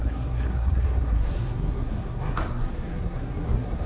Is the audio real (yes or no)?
no